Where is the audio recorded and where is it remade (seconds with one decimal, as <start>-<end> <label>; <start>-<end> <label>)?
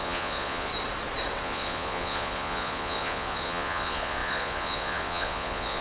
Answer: 0.0-0.7 remade; 0.7-1.4 recorded; 1.4-5.8 remade